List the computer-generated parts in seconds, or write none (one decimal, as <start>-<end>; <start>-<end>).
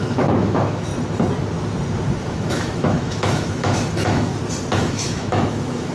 0.0-0.9; 2.2-4.3; 4.8-5.9